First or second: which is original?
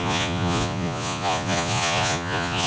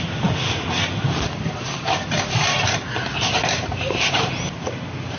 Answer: second